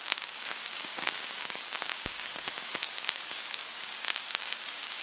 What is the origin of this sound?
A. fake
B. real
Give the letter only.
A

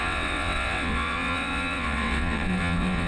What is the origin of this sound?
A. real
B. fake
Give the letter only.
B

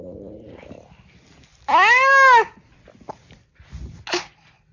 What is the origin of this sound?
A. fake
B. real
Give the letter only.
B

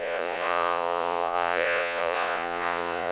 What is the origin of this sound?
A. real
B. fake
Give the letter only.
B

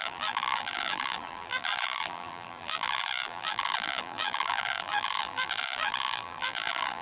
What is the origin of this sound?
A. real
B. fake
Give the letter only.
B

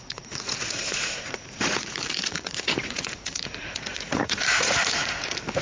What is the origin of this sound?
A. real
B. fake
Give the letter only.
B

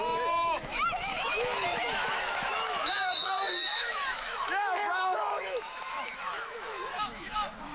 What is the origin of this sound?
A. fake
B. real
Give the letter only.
A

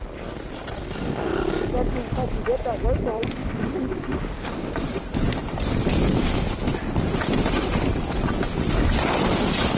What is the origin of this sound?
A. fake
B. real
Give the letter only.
A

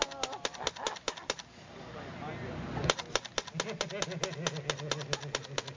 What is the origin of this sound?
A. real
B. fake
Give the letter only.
A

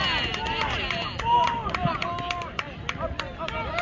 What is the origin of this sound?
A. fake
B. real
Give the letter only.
B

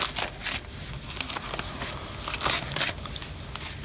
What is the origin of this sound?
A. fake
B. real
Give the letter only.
B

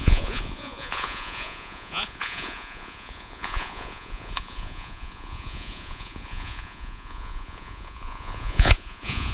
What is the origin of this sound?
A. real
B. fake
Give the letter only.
B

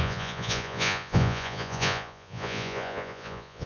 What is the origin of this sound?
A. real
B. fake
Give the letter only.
B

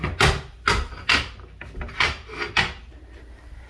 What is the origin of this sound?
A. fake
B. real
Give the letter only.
B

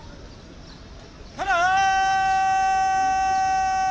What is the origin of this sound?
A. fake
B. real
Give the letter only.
B